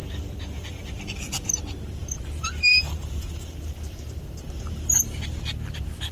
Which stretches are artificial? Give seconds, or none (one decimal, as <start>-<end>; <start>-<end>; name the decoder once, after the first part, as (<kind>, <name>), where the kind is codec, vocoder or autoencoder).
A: 0.0-0.9 (vocoder, BigVGAN v2); 2.4-5.3

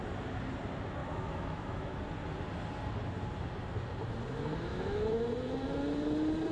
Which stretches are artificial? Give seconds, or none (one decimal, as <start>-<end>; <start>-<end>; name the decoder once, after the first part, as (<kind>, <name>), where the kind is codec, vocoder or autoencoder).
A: 1.0-2.0 (autoencoder, DAC-VAE); 4.7-5.2

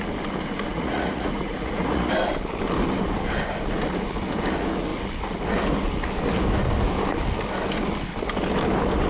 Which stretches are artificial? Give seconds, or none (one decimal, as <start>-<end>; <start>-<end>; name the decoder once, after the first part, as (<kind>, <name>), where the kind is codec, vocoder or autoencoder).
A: 0.7-2.1 (vocoder, Vocos)

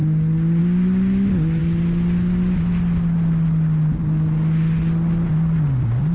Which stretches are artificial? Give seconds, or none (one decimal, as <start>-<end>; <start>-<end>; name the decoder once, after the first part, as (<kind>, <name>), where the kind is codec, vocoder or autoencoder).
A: none

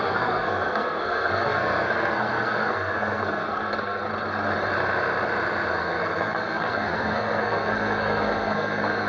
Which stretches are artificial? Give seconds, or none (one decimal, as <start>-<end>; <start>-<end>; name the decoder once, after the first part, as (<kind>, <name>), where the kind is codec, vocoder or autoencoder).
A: 0.0-4.1 (codec, SNAC); 5.7-9.1

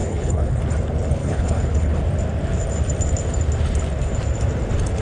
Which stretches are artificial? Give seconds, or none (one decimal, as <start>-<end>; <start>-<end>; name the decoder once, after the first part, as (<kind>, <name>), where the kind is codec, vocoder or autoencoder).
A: 0.0-0.6 (codec, HILCodec); 1.2-2.0